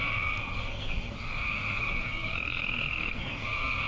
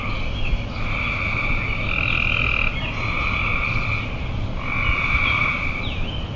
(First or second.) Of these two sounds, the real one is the second